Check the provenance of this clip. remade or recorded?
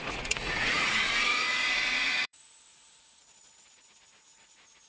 remade